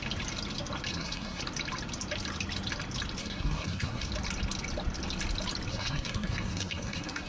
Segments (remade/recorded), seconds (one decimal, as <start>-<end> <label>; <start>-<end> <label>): 0.0-0.9 recorded; 0.9-1.4 remade; 1.4-3.2 recorded; 3.2-4.1 remade; 4.1-5.7 recorded; 5.7-7.3 remade